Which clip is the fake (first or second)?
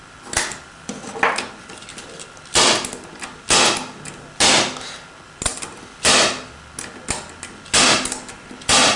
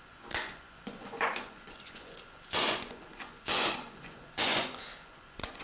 second